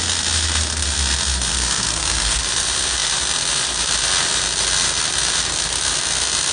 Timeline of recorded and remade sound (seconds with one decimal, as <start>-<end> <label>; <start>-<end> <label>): 0.0-1.5 recorded; 1.5-2.4 remade; 2.4-6.5 recorded